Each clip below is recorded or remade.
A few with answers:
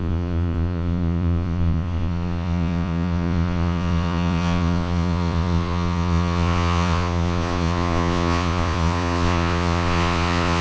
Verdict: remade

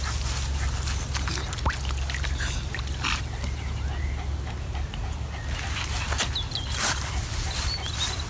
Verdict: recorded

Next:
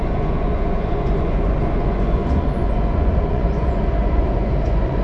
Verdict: remade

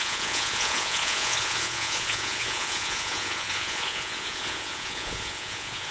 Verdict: remade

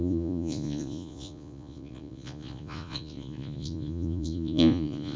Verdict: remade